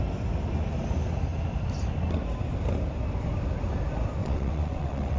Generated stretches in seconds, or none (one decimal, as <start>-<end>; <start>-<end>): 4.2-5.2